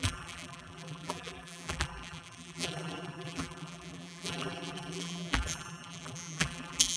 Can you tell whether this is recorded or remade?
remade